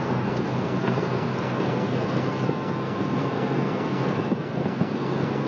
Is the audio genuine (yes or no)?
no